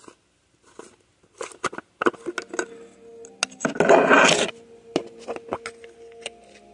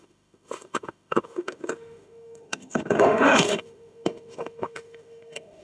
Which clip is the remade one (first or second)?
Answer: second